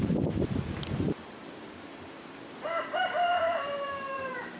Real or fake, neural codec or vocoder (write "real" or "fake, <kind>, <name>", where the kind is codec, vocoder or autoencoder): fake, vocoder, BigVGAN v2